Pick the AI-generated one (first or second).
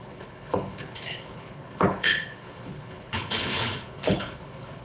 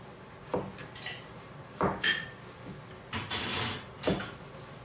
first